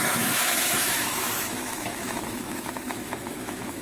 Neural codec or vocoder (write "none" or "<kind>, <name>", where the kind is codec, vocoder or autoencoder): autoencoder, DAC-VAE